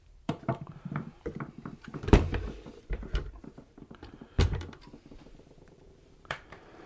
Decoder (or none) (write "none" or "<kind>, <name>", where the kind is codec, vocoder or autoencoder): vocoder, BigVGAN v2